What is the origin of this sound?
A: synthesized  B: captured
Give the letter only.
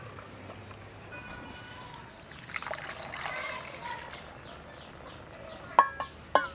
B